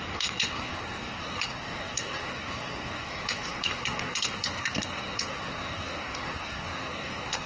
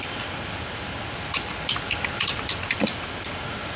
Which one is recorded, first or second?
second